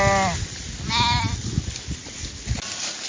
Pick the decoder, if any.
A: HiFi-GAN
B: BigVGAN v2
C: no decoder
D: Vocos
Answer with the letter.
C